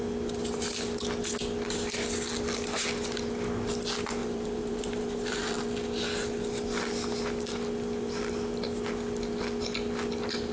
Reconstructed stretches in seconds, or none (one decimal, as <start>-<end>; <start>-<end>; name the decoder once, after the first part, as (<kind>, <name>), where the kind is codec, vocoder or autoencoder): 4.2-5.6 (vocoder, BigVGAN v2)